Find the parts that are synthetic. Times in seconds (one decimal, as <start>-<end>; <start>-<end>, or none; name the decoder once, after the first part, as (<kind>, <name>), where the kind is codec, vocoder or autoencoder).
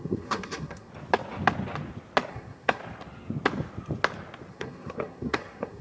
0.0-0.9 (codec, SNAC); 2.3-2.8; 4.5-5.8